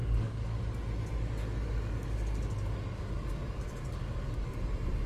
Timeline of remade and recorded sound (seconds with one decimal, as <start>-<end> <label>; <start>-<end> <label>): 0.0-0.6 remade; 0.6-1.4 recorded; 1.4-4.5 remade; 4.5-5.1 recorded